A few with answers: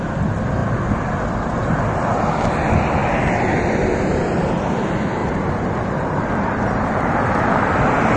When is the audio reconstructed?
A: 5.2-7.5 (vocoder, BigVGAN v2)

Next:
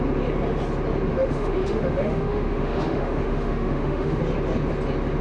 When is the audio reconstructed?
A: 1.1-4.2 (autoencoder, DAC-VAE)

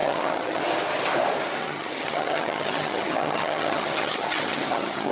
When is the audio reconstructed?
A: 0.0-0.6 (vocoder, HiFi-GAN); 1.6-5.1

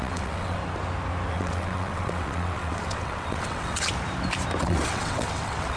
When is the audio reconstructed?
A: 0.0-0.6 (vocoder, WaveNeXt); 1.3-3.9; 4.6-5.8

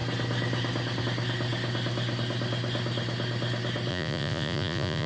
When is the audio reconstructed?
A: 3.9-5.1 (vocoder, Vocos)

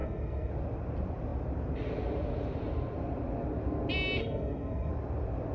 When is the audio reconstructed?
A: 0.0-0.5 (codec, SNAC); 4.2-4.9

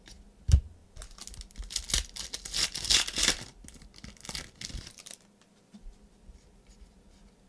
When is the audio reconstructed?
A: none

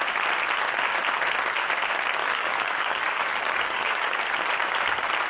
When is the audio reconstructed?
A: 2.2-4.2 (codec, DAC)